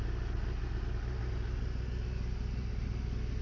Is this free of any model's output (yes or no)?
yes